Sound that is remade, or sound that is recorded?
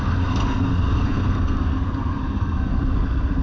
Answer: remade